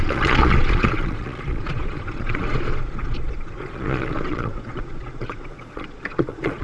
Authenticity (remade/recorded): remade